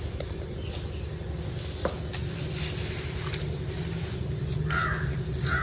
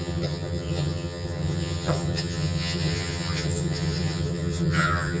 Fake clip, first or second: second